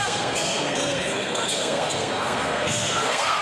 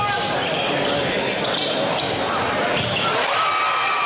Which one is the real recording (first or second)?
second